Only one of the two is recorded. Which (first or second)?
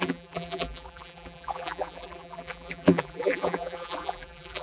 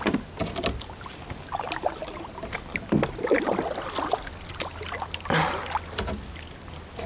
second